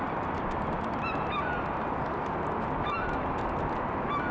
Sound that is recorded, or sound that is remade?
recorded